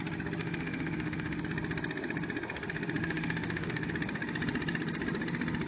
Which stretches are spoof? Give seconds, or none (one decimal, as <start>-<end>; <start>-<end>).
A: 0.4-1.4; 3.0-3.9